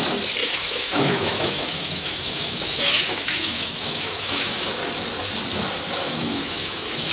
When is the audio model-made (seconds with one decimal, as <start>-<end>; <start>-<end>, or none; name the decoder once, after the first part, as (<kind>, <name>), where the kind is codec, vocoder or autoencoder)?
0.4-4.7 (autoencoder, DAC-VAE); 6.0-7.1